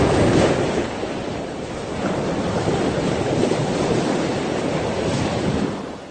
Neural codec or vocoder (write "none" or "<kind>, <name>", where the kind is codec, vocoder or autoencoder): vocoder, BigVGAN v2